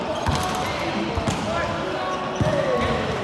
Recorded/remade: recorded